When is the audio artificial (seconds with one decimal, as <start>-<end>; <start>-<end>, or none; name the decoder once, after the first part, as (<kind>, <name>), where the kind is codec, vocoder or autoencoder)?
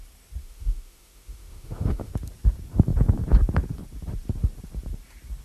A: 0.4-2.1 (autoencoder, DAC-VAE)